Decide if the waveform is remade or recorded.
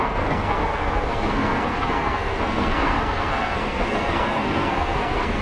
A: remade